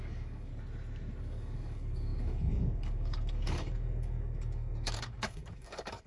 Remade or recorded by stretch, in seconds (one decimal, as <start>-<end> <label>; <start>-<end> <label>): 0.0-0.5 remade; 0.5-1.2 recorded; 1.2-6.1 remade